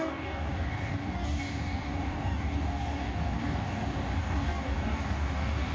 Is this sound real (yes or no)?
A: no